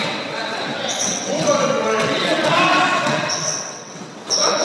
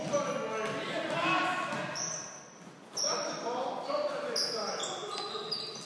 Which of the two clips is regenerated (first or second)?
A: first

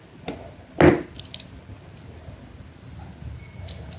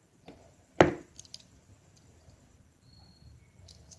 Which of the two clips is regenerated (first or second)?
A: second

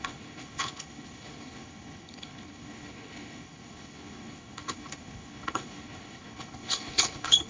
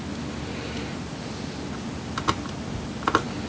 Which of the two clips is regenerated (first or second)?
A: first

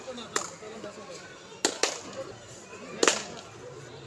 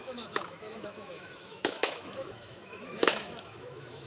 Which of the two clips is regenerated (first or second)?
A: second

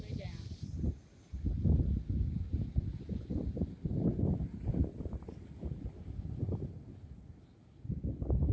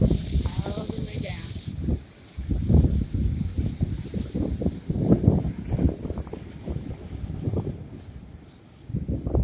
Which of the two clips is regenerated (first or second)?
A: second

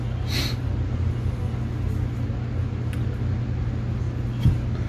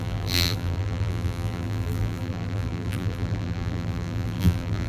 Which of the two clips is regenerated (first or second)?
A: second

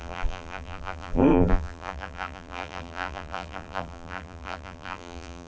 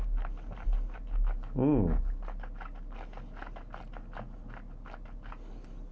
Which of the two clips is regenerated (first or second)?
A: first